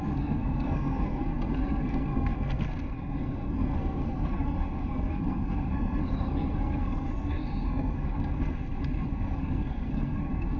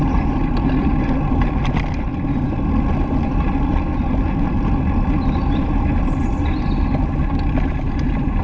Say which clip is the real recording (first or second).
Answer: second